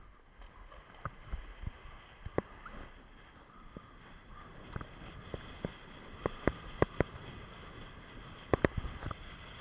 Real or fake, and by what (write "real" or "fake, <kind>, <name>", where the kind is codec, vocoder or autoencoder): real